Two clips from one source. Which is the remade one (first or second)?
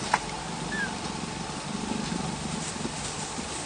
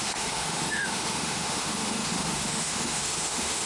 second